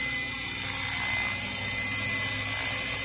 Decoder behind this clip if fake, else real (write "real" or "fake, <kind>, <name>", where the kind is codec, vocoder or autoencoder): real